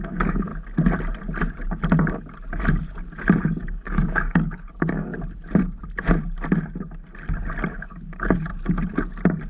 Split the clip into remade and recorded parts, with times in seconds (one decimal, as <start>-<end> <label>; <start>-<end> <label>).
0.0-0.5 remade; 0.5-3.4 recorded; 3.4-5.1 remade; 5.1-7.7 recorded; 7.7-8.5 remade; 8.5-9.5 recorded